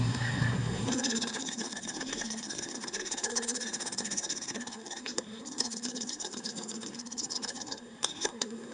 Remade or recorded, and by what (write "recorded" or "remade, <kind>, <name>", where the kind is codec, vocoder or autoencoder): remade, codec, SNAC